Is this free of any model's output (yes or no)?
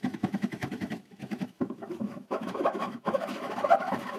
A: no